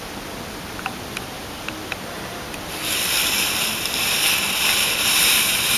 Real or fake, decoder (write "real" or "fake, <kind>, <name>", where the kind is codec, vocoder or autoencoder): fake, vocoder, BigVGAN v2